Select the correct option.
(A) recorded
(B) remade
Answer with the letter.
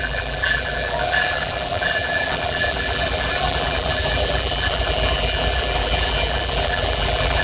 B